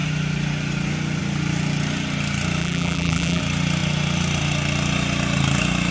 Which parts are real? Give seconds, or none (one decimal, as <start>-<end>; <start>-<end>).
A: 0.0-2.6; 3.4-5.9